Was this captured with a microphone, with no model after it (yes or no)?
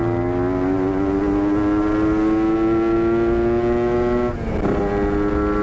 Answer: yes